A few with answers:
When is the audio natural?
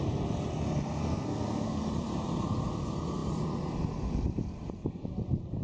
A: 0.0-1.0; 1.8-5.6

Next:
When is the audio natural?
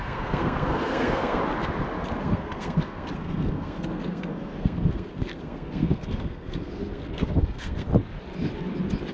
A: 1.4-2.2; 7.9-9.1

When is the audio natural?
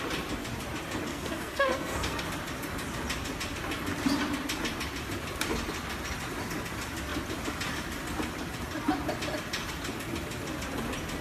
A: 0.0-1.1; 2.2-11.2